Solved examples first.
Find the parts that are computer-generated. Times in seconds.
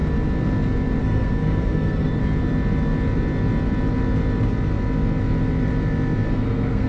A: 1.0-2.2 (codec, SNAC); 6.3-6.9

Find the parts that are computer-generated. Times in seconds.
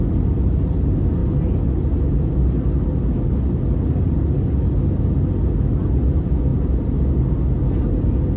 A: none